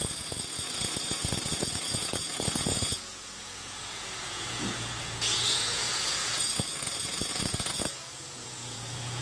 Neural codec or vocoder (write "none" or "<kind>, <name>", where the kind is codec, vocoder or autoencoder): vocoder, Vocos